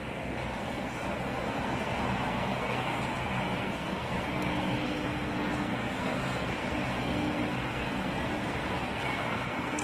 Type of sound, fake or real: fake